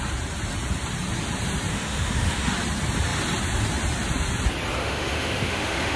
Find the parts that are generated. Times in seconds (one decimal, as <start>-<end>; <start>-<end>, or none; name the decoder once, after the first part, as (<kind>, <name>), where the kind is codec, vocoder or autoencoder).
1.7-2.5 (autoencoder, DAC-VAE); 4.8-6.0